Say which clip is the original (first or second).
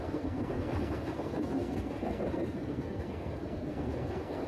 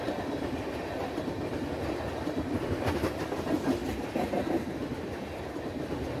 second